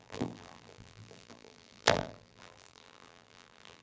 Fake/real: fake